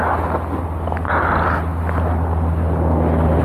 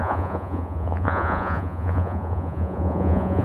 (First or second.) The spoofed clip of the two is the second